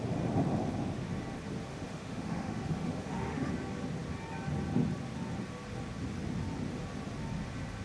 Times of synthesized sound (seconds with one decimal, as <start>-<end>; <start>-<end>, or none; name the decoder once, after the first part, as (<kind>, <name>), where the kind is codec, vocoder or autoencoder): 1.7-3.5 (autoencoder, DAC-VAE)